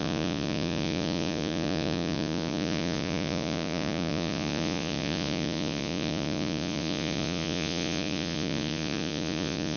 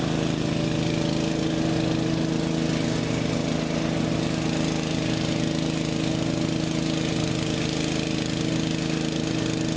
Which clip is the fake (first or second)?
first